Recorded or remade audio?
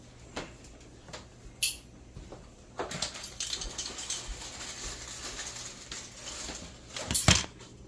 recorded